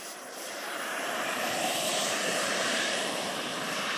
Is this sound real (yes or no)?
no